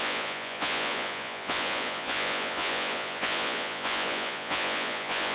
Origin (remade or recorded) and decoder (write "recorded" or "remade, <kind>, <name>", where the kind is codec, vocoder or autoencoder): remade, vocoder, Vocos